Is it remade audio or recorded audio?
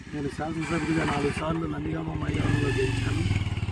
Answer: recorded